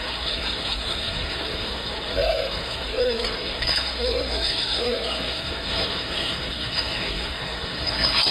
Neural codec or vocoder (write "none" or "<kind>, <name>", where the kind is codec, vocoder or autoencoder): codec, SNAC